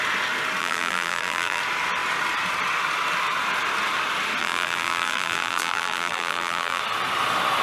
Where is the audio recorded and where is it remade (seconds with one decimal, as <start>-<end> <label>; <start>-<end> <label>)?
0.0-0.6 recorded; 0.6-1.6 remade; 1.6-4.4 recorded; 4.4-6.8 remade; 6.8-7.6 recorded